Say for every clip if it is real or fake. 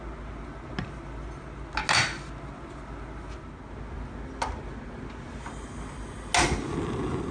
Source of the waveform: real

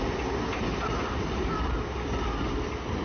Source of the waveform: real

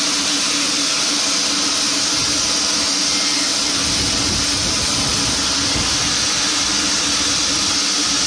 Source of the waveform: real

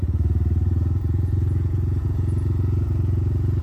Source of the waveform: fake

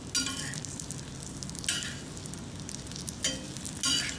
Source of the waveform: real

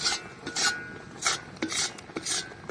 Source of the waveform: real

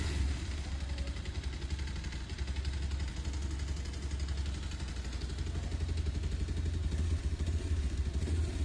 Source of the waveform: real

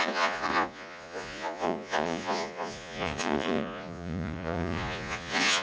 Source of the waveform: fake